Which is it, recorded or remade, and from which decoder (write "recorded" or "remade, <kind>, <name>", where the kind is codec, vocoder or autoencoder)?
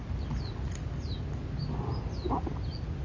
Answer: recorded